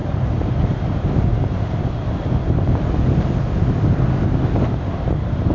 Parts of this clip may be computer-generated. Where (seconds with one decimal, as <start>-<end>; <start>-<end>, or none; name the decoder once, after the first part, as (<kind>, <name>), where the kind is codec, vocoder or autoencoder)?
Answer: 0.0-0.5 (vocoder, BigVGAN v2); 1.3-2.0; 2.4-3.4